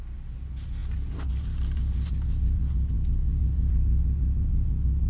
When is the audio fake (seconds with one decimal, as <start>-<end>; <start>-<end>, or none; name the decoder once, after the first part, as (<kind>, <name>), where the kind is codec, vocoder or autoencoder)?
none